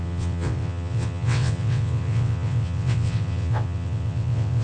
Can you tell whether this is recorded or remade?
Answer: remade